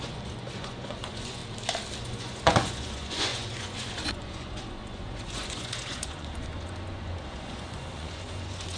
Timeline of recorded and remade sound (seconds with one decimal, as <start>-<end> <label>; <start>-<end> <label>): 0.0-1.4 remade; 1.4-2.0 recorded; 2.0-8.8 remade